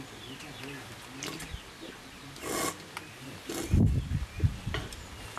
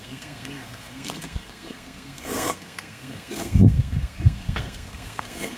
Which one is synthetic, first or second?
second